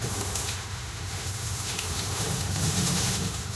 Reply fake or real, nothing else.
fake